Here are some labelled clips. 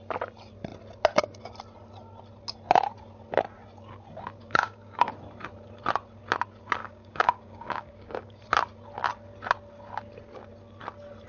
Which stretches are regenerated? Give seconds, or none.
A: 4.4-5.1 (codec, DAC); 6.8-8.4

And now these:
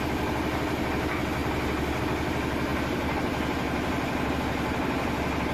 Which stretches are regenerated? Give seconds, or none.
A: none

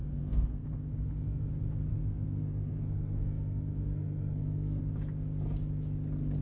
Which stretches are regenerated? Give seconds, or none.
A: 0.0-1.5 (codec, SNAC); 1.9-4.8

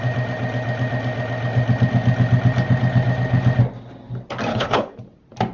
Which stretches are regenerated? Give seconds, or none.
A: 4.5-5.0 (codec, HILCodec)

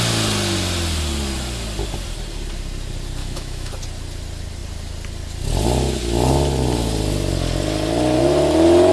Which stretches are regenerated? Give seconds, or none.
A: 3.2-3.7 (autoencoder, DAC-VAE)

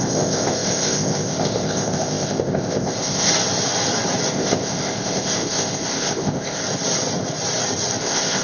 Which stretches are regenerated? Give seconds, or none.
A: 0.0-3.3 (codec, ZipCodec); 4.3-6.6; 8.0-8.4